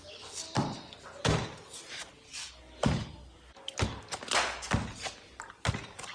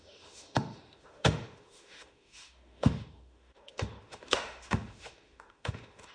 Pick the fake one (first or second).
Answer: second